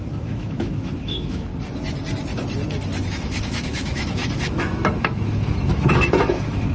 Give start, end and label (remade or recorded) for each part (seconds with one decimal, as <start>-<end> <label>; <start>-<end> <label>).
0.0-1.5 remade; 1.5-3.1 recorded; 3.1-6.7 remade